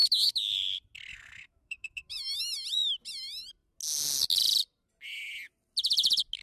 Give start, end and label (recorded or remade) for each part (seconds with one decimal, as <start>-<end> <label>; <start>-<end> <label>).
0.0-0.5 remade; 0.5-1.1 recorded; 1.1-2.4 remade; 2.4-6.4 recorded